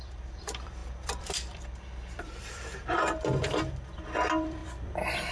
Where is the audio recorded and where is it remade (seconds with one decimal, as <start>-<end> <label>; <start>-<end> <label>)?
0.0-4.6 remade; 4.6-5.3 recorded